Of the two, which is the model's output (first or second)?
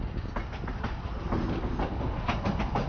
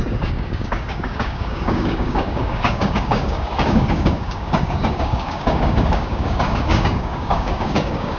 second